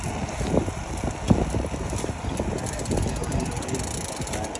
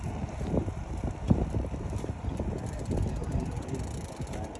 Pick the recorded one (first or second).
first